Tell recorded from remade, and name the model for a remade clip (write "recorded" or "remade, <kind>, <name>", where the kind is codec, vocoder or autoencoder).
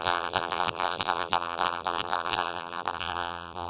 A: remade, vocoder, BigVGAN v2